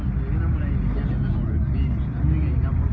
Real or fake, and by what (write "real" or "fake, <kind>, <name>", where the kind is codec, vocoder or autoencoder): real